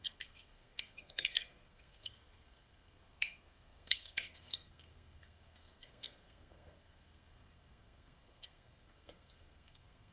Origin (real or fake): fake